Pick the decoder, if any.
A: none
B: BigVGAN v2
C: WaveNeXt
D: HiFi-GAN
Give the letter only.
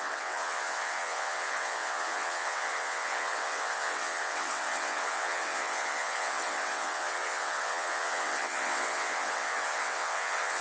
C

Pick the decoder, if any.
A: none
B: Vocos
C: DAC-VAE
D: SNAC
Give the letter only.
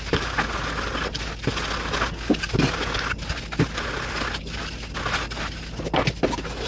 A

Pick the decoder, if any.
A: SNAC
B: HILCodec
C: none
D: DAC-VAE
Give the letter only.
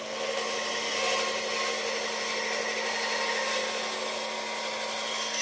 C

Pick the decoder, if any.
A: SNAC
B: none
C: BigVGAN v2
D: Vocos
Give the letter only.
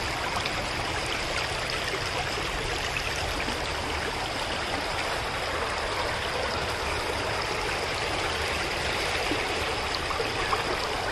B